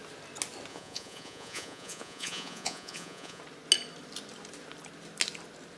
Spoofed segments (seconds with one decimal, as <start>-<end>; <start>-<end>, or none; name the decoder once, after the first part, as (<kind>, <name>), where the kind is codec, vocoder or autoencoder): 0.7-3.4 (vocoder, Vocos)